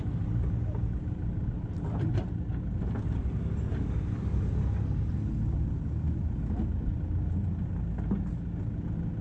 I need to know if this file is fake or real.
real